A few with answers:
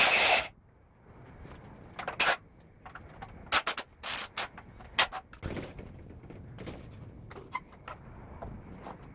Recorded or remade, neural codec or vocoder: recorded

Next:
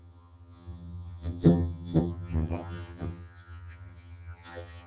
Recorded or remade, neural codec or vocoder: remade, vocoder, HiFi-GAN